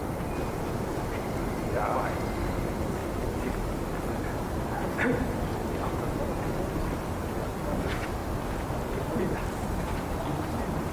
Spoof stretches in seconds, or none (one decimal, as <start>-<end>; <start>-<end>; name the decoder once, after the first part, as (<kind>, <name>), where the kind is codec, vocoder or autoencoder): 0.0-5.5 (vocoder, BigVGAN v2); 6.7-8.2; 8.7-10.9